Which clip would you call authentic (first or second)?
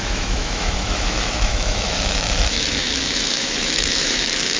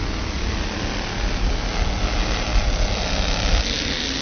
second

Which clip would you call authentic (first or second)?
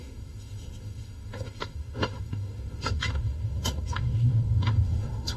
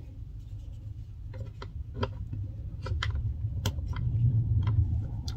second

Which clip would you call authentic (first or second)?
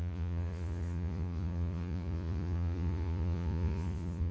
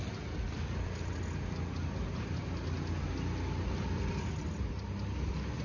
second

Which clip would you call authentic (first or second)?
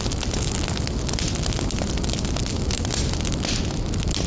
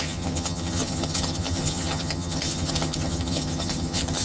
first